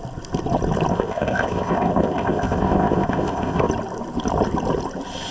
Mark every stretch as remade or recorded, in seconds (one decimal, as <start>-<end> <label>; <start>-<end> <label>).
0.0-0.9 recorded; 0.9-3.7 remade; 3.7-5.3 recorded